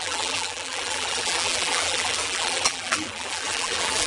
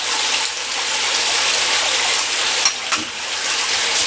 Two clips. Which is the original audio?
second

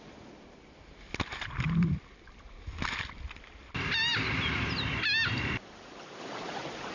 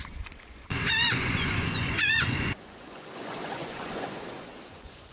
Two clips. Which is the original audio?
first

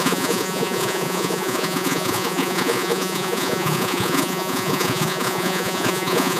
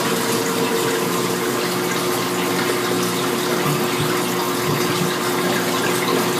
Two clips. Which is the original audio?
second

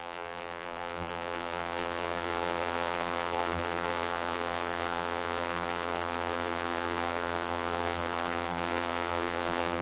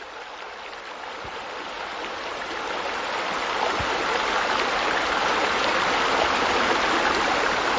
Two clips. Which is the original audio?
second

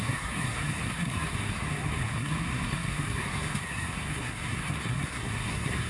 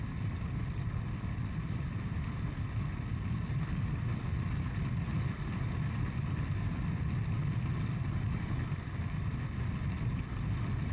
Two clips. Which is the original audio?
second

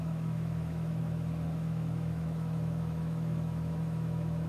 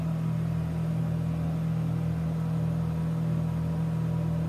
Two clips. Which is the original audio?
second